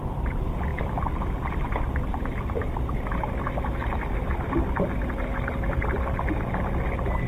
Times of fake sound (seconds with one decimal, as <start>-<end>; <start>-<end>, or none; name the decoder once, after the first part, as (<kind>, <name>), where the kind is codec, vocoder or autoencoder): none